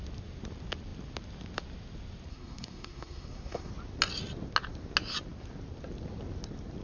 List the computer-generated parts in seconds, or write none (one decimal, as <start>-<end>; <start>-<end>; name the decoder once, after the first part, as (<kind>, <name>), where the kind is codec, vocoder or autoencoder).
2.3-3.7 (codec, SNAC)